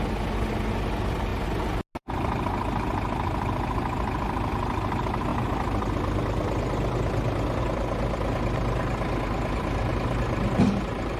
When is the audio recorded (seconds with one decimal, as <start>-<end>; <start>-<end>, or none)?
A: 0.0-11.2